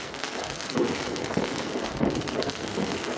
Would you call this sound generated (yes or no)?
yes